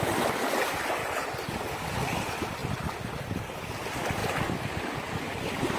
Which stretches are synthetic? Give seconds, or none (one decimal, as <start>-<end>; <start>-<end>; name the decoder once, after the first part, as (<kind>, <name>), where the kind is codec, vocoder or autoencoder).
1.0-1.5 (vocoder, BigVGAN v2)